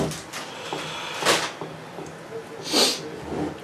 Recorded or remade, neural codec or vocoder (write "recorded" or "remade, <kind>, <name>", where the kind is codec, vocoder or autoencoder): recorded